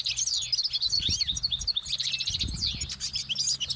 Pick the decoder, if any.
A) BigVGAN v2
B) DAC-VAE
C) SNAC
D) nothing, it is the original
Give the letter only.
D